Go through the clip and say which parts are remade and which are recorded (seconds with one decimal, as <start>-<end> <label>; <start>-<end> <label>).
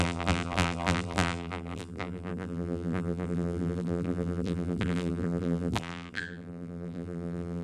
0.0-7.6 remade